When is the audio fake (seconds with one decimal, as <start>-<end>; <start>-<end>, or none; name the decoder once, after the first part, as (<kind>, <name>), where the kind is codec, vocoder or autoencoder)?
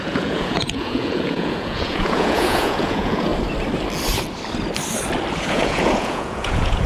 0.0-3.3 (vocoder, Vocos); 5.3-6.9